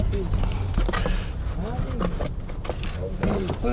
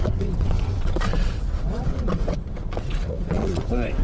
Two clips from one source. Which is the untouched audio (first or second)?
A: first